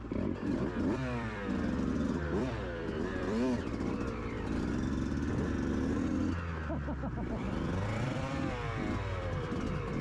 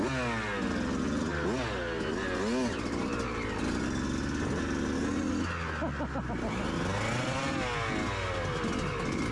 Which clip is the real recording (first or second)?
second